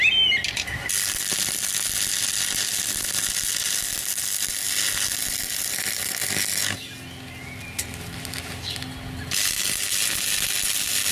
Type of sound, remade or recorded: recorded